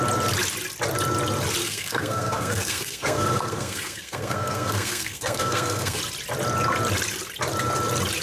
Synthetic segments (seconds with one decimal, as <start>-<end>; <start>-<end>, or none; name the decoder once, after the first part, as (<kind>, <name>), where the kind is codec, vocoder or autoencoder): 1.6-6.0 (codec, SNAC)